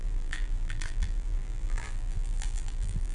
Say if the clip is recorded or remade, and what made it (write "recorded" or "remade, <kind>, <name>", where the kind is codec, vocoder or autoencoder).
remade, vocoder, BigVGAN v2